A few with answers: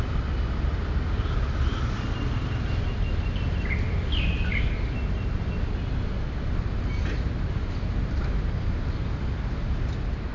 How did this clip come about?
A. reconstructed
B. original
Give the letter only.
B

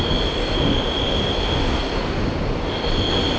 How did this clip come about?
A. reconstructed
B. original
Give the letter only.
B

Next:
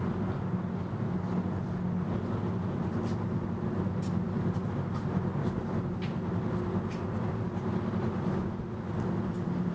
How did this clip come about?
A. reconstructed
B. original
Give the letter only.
B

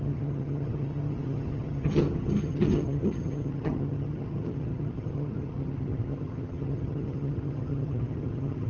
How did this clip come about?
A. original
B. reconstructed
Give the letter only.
B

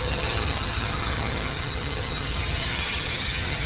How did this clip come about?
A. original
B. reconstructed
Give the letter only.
B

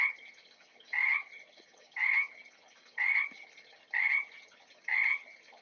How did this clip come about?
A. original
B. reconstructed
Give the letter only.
B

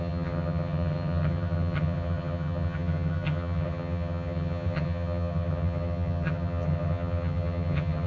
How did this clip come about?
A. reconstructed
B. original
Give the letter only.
A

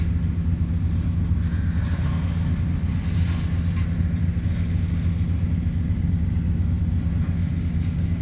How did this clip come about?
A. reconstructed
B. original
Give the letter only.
B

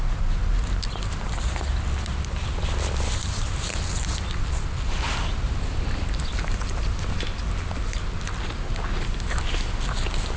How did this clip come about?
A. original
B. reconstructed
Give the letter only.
A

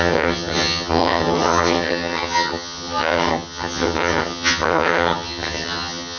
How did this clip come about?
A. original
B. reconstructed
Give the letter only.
B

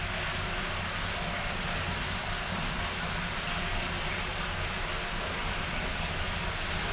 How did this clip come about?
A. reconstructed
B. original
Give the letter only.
B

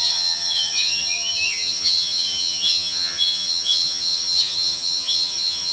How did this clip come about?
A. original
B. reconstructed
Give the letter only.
B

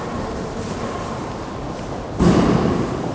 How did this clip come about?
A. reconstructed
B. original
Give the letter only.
B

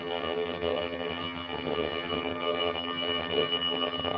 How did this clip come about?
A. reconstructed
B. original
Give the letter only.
A